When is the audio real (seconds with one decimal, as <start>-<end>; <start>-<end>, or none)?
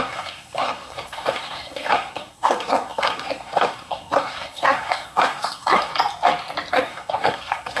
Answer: 5.9-6.7